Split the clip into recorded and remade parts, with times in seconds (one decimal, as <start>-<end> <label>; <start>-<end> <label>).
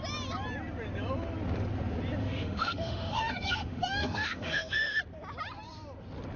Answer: 0.0-2.2 recorded; 2.2-5.0 remade; 5.0-6.4 recorded